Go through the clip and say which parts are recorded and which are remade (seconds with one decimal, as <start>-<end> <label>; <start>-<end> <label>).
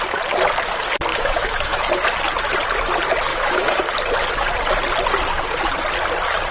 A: 0.0-1.1 recorded; 1.1-1.9 remade; 1.9-3.3 recorded; 3.3-3.8 remade; 3.8-6.5 recorded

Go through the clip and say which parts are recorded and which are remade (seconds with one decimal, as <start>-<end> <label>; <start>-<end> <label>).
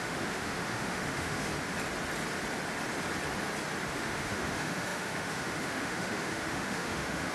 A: 0.0-1.5 remade; 1.5-3.9 recorded; 3.9-7.3 remade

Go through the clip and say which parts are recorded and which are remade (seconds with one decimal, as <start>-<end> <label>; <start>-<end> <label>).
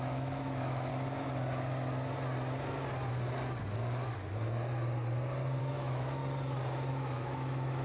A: 0.0-0.9 remade; 0.9-5.6 recorded; 5.6-6.2 remade; 6.2-6.9 recorded; 6.9-7.8 remade